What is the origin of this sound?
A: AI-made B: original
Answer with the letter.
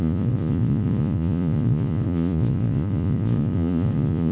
A